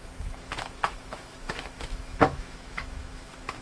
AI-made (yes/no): yes